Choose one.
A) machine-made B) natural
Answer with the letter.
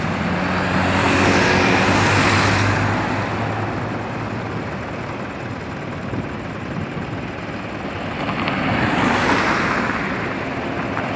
B